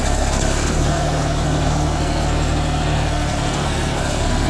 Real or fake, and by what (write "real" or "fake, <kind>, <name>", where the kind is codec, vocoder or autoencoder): fake, codec, SNAC